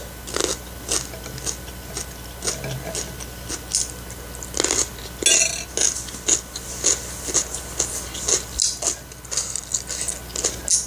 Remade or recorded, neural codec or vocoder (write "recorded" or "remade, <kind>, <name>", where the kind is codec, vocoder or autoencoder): recorded